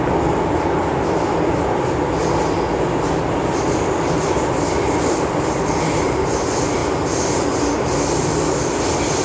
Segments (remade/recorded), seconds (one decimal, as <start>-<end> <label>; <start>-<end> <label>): 0.0-9.2 recorded